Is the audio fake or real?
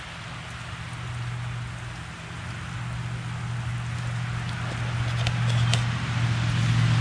real